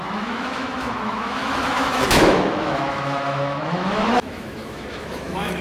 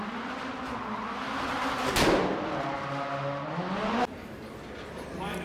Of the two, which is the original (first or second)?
second